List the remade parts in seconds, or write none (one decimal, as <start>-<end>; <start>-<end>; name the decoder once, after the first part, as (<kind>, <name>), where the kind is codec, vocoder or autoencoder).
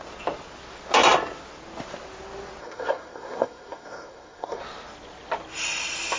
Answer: 2.6-4.6 (codec, SNAC)